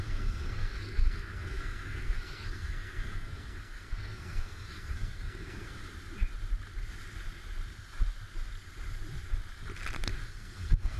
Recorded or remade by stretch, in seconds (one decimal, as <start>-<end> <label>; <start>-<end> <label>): 0.0-5.8 remade; 5.8-10.3 recorded; 10.3-11.0 remade